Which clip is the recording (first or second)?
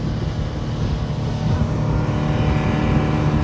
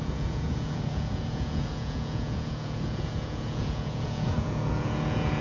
first